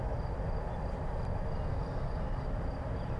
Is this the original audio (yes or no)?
yes